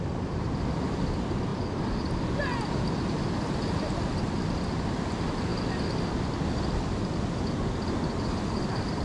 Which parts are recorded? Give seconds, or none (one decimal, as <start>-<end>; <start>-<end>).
0.0-9.0